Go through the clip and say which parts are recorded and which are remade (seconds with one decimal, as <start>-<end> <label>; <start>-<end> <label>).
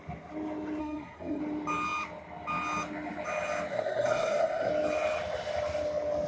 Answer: 0.0-0.8 recorded; 0.8-1.4 remade; 1.4-3.7 recorded; 3.7-4.7 remade; 4.7-6.3 recorded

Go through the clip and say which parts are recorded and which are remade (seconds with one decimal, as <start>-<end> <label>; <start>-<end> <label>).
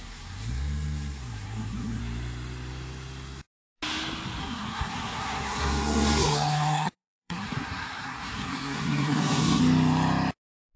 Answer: 0.0-2.0 remade; 2.0-4.4 recorded; 4.4-9.6 remade; 9.6-10.8 recorded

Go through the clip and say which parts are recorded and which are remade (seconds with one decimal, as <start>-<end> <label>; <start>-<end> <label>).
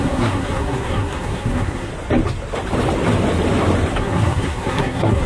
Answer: 0.0-1.9 remade; 1.9-3.9 recorded; 3.9-5.3 remade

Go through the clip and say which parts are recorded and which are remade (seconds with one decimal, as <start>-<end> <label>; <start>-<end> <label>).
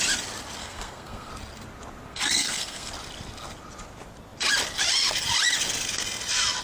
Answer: 0.0-0.6 recorded; 0.6-1.3 remade; 1.3-2.1 recorded; 2.1-2.9 remade; 2.9-6.6 recorded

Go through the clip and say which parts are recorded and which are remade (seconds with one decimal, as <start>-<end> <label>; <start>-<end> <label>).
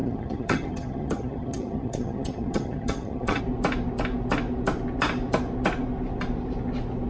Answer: 0.0-3.4 remade; 3.4-7.1 recorded